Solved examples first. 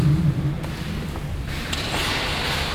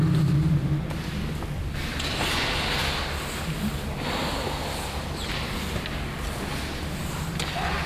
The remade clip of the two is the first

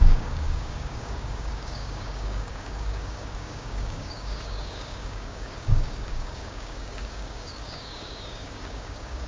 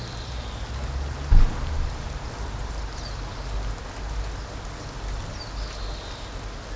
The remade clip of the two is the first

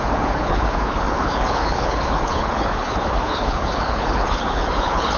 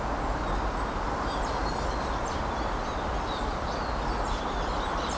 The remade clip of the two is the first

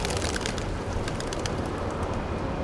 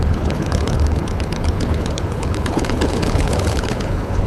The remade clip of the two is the second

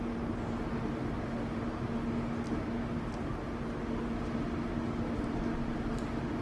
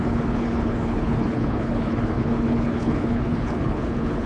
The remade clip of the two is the second